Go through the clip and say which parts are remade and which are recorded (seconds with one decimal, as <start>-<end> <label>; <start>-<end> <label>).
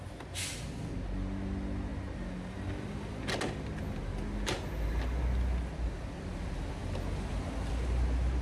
0.0-8.4 recorded